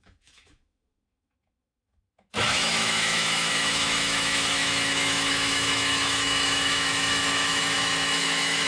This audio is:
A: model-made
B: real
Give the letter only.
A